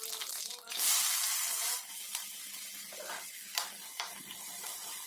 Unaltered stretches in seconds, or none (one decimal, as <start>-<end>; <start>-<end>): 0.0-5.1